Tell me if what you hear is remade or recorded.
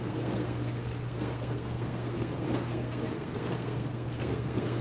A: remade